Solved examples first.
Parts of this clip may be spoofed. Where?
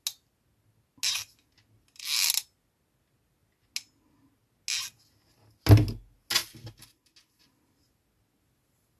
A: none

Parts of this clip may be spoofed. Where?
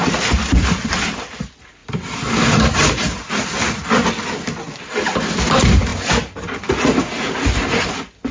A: 1.8-3.3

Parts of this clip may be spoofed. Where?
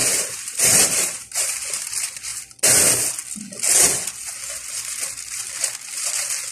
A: 0.0-1.9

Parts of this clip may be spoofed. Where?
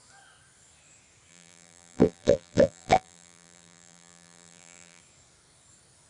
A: 1.3-5.0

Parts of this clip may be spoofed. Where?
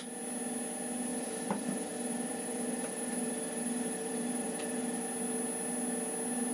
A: 1.1-5.0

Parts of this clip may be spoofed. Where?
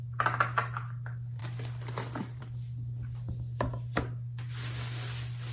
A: none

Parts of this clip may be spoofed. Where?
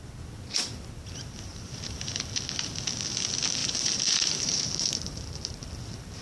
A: 1.5-2.1; 3.6-5.6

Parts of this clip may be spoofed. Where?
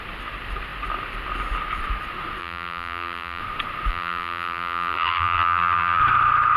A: 2.4-3.4; 3.9-6.0